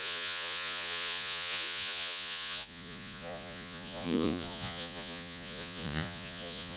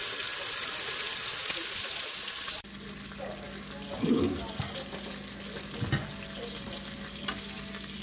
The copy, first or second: first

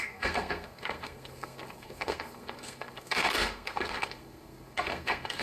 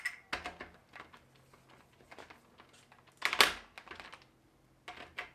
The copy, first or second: first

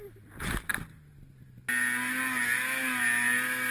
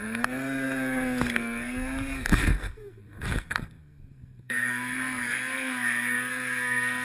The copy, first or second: second